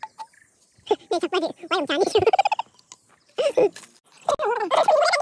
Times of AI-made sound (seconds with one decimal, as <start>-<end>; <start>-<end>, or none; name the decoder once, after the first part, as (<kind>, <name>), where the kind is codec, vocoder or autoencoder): none